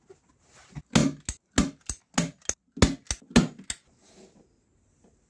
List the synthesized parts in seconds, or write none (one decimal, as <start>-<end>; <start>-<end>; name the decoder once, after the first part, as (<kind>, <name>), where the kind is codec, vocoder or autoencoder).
none

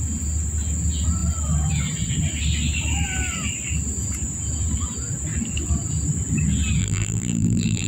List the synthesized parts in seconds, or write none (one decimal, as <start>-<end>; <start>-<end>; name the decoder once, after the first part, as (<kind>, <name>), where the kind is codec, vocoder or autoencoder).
6.8-7.9 (vocoder, BigVGAN v2)

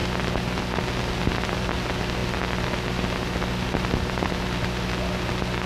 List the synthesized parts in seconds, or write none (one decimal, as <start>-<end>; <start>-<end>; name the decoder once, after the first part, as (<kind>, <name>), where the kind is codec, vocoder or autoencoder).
none

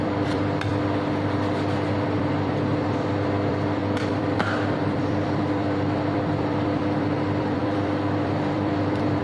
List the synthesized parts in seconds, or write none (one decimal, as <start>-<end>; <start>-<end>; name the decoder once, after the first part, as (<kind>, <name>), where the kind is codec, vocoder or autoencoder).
0.0-0.7 (vocoder, BigVGAN v2); 2.1-9.2

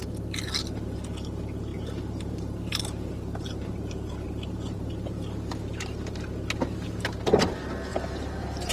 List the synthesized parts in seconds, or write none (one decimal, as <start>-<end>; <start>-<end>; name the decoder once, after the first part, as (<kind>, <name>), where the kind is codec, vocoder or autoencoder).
1.7-6.2 (vocoder, BigVGAN v2); 7.9-8.7

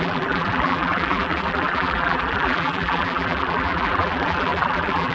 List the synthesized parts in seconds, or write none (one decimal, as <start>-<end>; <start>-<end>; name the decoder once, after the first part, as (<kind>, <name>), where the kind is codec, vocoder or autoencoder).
0.0-5.1 (vocoder, BigVGAN v2)

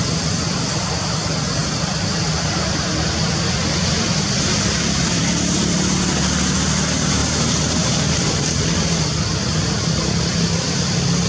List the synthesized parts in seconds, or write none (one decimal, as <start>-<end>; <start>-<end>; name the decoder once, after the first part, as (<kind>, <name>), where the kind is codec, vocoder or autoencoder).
1.6-5.9 (vocoder, BigVGAN v2); 7.2-8.3

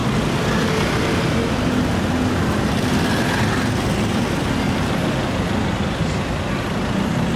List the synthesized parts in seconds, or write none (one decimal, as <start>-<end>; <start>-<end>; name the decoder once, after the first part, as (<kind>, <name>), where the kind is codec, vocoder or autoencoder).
none